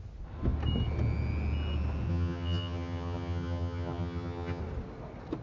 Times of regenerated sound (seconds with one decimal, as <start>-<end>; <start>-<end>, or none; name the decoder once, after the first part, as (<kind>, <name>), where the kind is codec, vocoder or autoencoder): 2.1-4.6 (vocoder, HiFi-GAN)